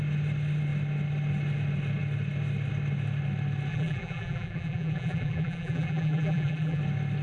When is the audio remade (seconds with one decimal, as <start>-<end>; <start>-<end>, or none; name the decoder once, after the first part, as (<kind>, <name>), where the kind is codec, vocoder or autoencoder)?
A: 3.7-6.8 (vocoder, BigVGAN v2)